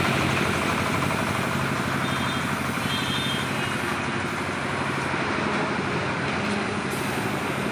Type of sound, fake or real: real